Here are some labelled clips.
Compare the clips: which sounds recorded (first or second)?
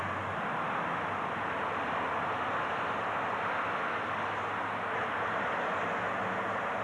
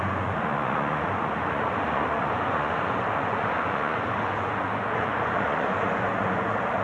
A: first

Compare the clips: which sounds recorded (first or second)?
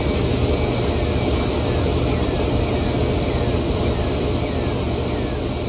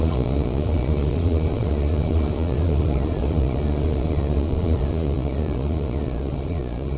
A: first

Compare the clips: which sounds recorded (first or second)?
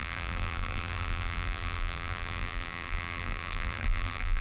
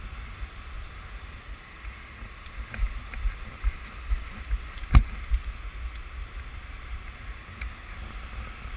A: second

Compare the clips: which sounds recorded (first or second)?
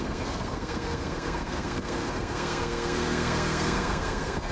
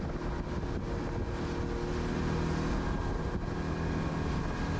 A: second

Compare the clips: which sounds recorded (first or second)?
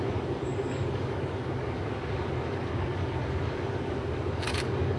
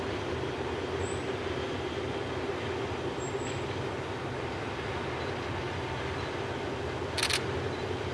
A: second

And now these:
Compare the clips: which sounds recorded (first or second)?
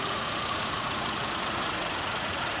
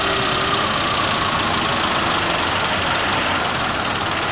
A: second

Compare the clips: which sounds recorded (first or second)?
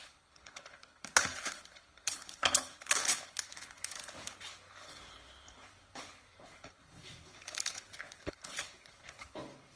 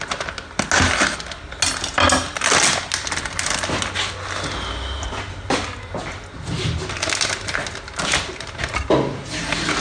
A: second